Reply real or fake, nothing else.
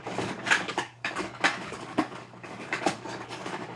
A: fake